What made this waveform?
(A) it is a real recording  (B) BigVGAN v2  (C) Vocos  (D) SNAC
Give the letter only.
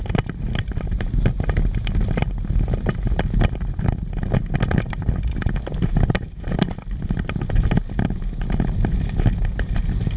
A